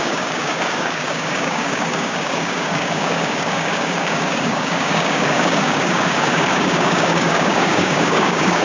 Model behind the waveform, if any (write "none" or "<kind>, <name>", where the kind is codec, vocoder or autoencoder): codec, DAC